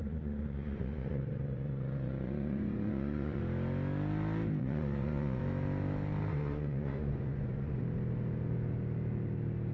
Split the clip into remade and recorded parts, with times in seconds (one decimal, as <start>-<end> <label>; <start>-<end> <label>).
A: 0.0-3.4 remade; 3.4-4.6 recorded; 4.6-5.4 remade; 5.4-6.3 recorded; 6.3-7.8 remade; 7.8-9.7 recorded